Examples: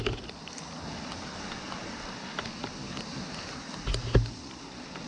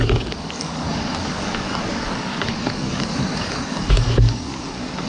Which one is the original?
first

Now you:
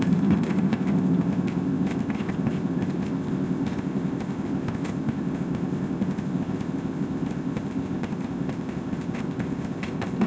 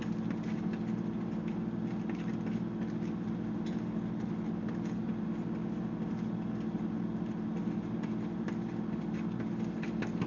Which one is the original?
second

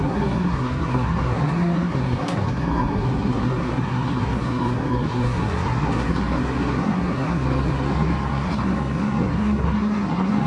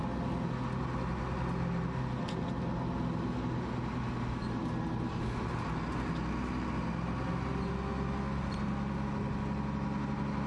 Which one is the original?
second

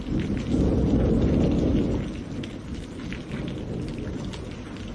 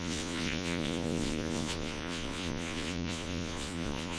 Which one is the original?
first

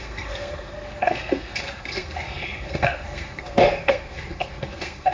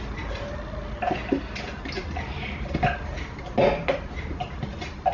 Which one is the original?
second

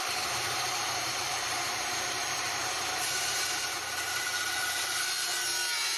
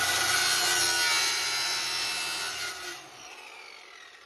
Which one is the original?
second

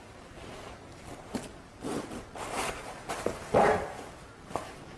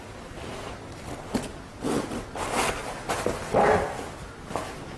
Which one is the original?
second